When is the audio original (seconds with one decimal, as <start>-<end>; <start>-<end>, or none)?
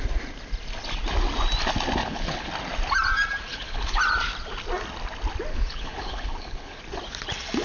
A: 0.0-2.0; 2.5-3.5; 4.0-5.5; 6.8-7.6